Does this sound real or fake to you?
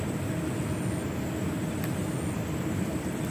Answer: fake